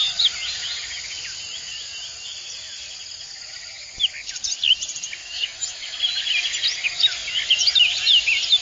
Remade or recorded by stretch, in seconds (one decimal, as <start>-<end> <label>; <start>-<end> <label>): 0.0-5.2 recorded; 5.2-6.0 remade; 6.0-8.6 recorded